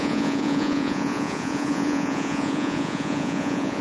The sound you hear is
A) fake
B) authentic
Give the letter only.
A